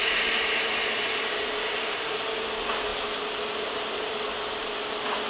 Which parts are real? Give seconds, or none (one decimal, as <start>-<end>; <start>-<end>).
0.0-5.3